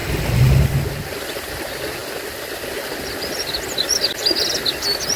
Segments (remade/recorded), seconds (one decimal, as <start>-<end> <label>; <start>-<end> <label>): 0.0-5.2 recorded